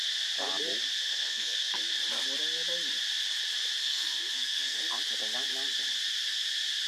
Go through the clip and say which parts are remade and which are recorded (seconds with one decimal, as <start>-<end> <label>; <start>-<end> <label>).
0.0-1.0 recorded; 1.0-1.8 remade; 1.8-3.8 recorded; 3.8-4.8 remade; 4.8-6.9 recorded